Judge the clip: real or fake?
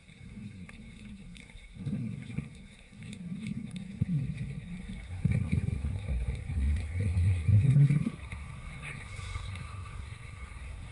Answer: fake